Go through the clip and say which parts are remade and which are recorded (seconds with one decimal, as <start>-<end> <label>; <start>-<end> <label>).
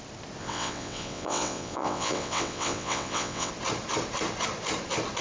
0.0-0.4 recorded; 0.4-3.5 remade; 3.5-5.2 recorded